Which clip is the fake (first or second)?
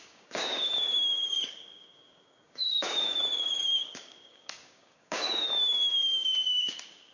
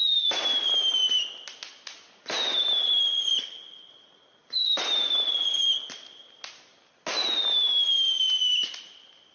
first